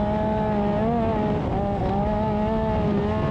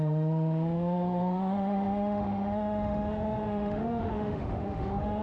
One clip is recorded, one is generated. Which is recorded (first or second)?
first